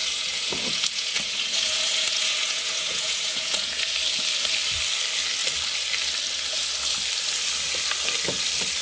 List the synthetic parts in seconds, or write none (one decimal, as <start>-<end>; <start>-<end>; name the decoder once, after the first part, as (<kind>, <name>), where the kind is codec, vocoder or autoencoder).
0.0-3.9 (vocoder, Vocos)